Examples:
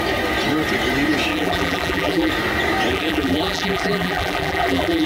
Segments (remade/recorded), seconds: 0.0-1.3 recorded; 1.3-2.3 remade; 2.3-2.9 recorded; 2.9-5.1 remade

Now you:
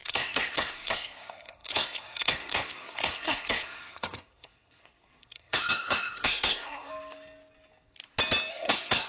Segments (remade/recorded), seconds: 0.0-6.9 remade; 6.9-8.5 recorded; 8.5-9.1 remade

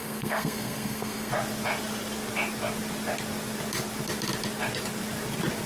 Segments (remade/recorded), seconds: 0.0-1.3 remade; 1.3-5.7 recorded

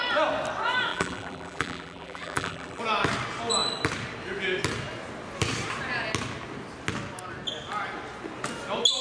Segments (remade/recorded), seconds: 0.0-0.9 recorded; 0.9-2.8 remade; 2.8-9.0 recorded

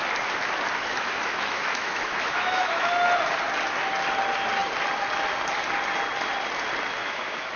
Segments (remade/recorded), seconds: 0.0-0.8 recorded; 0.8-2.9 remade; 2.9-7.0 recorded; 7.0-7.6 remade